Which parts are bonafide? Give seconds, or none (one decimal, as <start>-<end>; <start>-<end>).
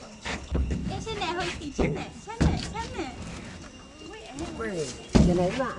0.8-1.5; 2.0-5.8